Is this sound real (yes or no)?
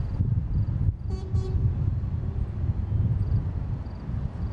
yes